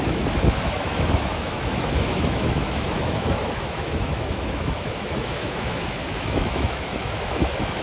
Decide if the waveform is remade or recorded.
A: remade